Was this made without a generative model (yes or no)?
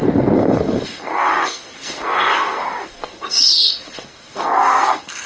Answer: no